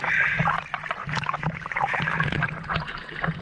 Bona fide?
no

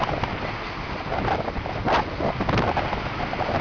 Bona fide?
yes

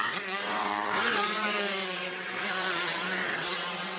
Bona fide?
no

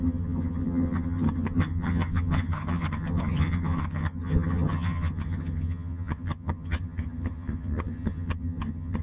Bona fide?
no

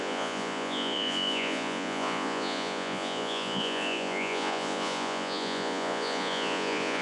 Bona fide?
no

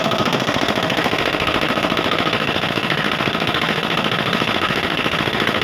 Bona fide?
no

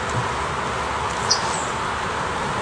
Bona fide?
yes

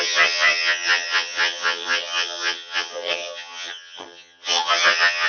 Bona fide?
no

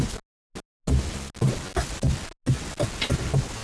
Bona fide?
yes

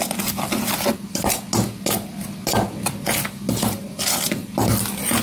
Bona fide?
yes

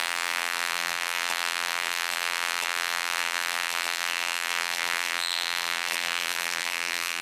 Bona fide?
no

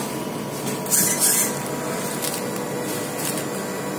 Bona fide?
yes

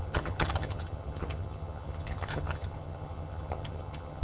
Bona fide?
no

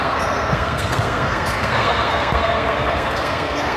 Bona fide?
no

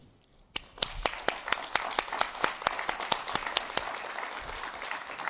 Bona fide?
yes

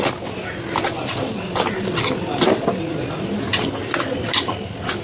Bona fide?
yes